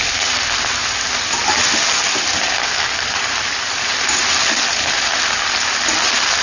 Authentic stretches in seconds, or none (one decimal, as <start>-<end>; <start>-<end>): 0.0-6.4